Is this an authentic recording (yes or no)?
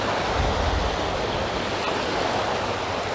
yes